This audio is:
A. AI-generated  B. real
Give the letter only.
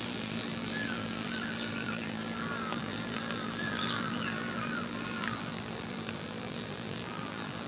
A